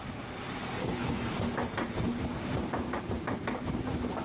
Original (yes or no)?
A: yes